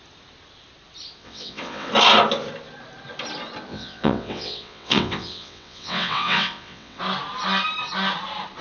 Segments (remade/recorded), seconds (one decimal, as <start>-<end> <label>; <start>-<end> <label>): 0.0-1.2 recorded; 1.2-1.9 remade; 1.9-3.7 recorded; 3.7-7.0 remade; 7.0-8.6 recorded

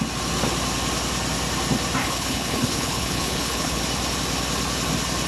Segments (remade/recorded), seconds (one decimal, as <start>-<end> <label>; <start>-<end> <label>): 0.0-2.0 recorded; 2.0-3.8 remade; 3.8-5.3 recorded

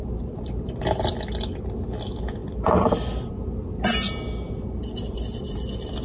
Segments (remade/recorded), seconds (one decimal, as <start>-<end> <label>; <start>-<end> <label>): 0.0-1.0 remade; 1.0-4.8 recorded; 4.8-5.6 remade; 5.6-6.0 recorded

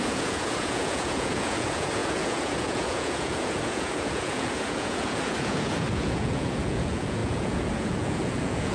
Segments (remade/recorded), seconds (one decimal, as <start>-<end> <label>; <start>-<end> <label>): 0.0-8.7 remade